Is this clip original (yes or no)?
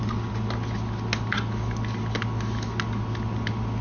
yes